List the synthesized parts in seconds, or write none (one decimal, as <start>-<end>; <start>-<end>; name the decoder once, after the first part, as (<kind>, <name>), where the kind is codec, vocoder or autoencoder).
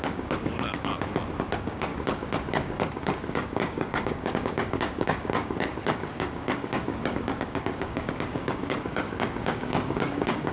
0.0-0.9 (codec, DAC); 1.4-1.9; 2.5-10.5